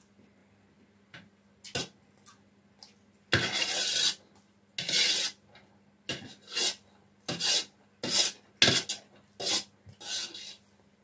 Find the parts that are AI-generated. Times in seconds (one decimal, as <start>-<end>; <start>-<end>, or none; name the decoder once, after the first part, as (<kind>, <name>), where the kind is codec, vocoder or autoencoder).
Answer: none